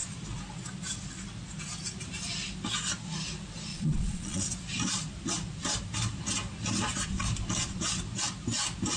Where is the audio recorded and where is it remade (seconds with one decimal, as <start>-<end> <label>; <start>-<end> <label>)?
0.0-3.7 recorded; 3.7-4.5 remade; 4.5-9.0 recorded